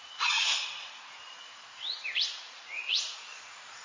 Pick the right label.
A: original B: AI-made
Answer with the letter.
B